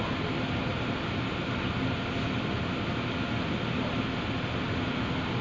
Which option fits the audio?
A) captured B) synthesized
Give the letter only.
A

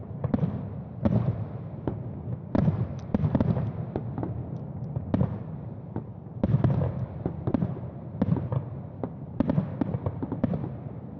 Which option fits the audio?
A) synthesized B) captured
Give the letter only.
B